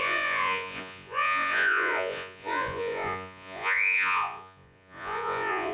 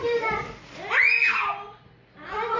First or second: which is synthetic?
first